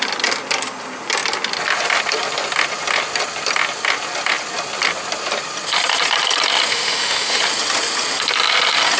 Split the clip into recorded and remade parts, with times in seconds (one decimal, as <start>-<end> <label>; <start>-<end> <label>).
0.0-6.7 recorded; 6.7-7.4 remade; 7.4-9.0 recorded